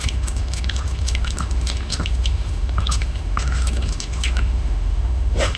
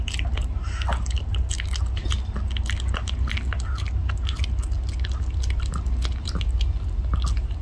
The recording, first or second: second